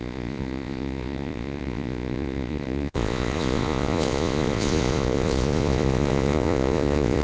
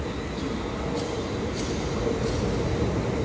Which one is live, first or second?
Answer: second